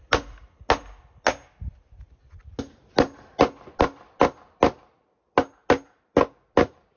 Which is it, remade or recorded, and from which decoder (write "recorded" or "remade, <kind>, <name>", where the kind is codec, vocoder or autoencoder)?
recorded